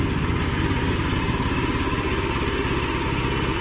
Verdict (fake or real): real